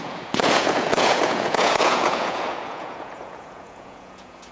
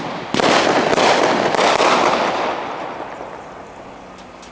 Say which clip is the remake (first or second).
first